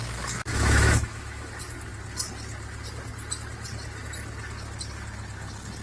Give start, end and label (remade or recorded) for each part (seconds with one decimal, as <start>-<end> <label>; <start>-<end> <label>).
0.0-0.5 recorded; 0.5-1.5 remade; 1.5-5.8 recorded